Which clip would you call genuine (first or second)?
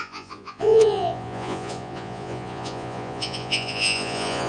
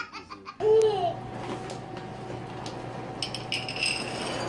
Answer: second